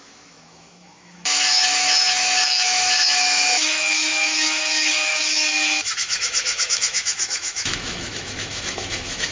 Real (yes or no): no